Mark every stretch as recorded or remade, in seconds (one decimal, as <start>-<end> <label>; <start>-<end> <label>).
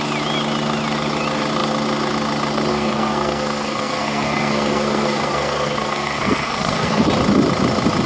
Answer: 0.0-2.7 recorded; 2.7-7.1 remade; 7.1-8.1 recorded